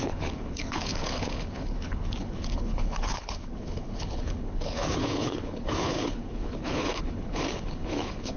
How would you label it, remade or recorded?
remade